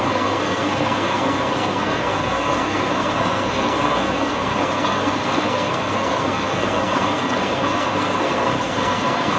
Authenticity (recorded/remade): remade